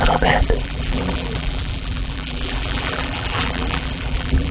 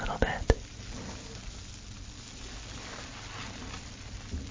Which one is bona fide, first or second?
second